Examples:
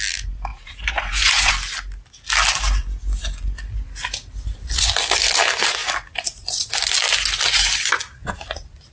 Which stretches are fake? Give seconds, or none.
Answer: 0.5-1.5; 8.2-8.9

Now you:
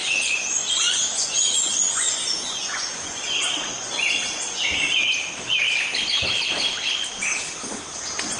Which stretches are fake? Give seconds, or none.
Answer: 0.0-4.7

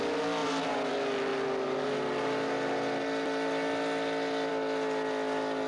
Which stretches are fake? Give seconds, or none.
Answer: none

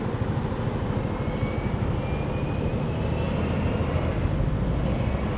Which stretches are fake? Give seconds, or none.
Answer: none

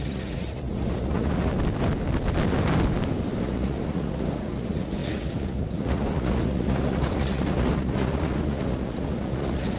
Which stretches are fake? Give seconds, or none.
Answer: 0.0-1.5; 3.4-9.8

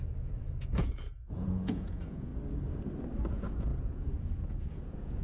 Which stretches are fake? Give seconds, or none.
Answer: 0.0-2.3; 3.3-5.2